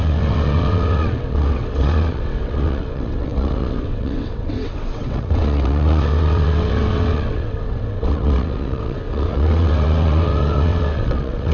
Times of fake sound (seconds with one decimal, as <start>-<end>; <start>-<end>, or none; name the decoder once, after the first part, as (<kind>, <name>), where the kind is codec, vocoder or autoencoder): 0.0-11.5 (vocoder, WaveNeXt)